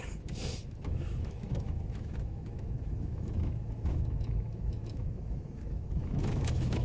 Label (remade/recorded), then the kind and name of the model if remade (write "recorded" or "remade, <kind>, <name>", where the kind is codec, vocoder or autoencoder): remade, autoencoder, DAC-VAE